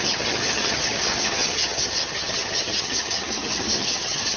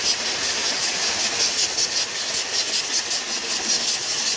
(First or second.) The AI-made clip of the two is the first